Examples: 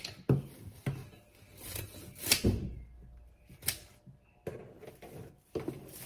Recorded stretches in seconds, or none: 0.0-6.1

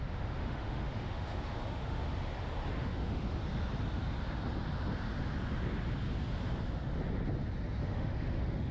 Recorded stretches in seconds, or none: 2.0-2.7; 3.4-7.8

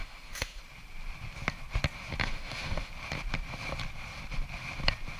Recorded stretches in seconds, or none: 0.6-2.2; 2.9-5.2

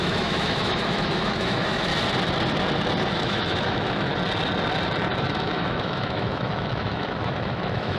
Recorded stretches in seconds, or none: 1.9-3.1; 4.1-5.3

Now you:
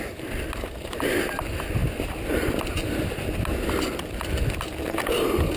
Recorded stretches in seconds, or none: 0.0-5.6

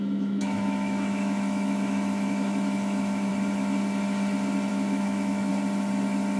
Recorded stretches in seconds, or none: 3.3-4.7; 5.5-6.4